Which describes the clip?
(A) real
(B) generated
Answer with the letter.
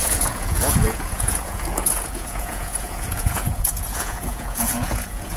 B